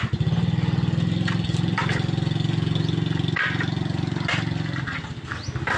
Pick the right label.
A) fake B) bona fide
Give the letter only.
B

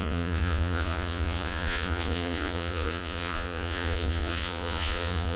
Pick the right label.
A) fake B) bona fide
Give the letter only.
A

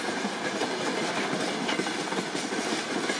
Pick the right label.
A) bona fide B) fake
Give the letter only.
A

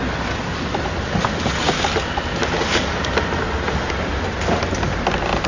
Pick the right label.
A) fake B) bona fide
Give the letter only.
B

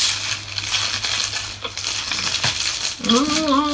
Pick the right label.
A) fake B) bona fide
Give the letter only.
B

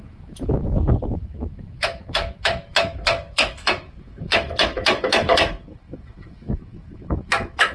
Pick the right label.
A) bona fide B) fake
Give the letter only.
B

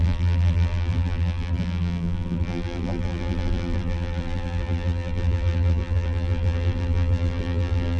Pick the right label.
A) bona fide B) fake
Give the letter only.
B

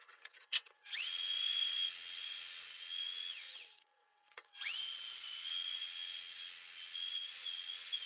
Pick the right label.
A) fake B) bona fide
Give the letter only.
A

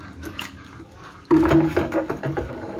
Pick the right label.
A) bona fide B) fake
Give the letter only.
B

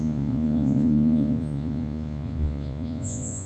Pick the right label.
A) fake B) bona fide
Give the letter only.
A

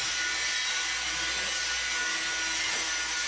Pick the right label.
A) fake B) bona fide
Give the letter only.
B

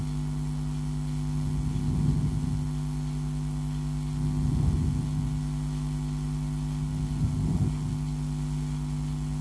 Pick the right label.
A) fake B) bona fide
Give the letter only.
B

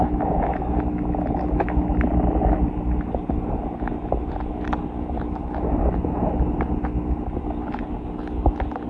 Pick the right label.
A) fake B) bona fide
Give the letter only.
B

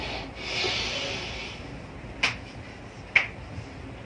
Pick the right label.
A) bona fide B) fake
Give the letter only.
A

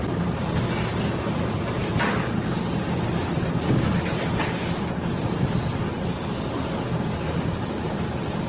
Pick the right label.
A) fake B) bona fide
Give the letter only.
B